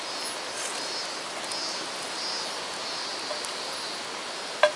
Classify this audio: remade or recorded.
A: recorded